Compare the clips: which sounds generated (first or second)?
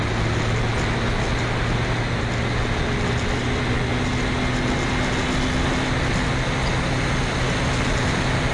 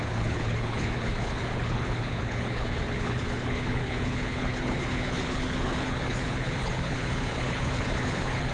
second